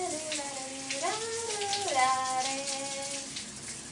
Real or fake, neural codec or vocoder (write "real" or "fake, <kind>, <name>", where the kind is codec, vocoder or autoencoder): real